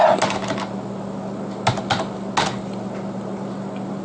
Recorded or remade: recorded